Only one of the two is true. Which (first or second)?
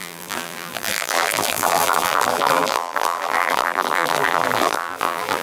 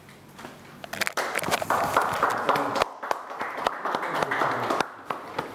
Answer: second